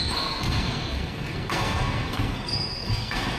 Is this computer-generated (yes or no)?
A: yes